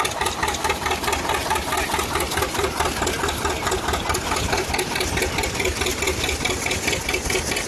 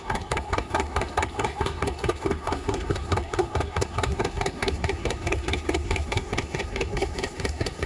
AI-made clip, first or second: second